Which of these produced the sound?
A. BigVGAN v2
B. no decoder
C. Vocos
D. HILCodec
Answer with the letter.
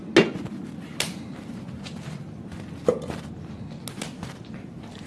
B